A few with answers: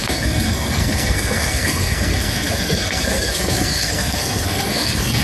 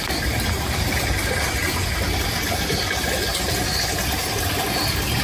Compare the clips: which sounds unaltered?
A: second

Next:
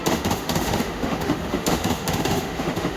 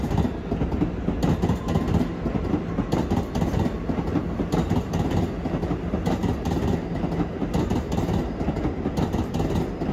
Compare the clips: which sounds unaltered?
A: second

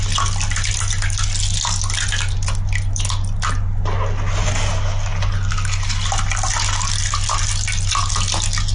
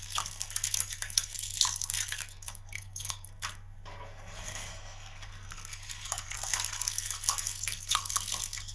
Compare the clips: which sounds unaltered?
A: first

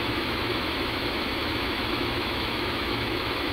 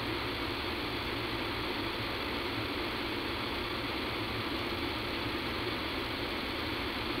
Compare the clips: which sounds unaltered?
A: second